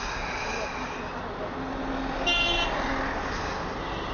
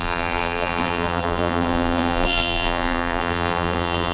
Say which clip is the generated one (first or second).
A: second